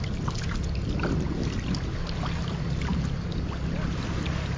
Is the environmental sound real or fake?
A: real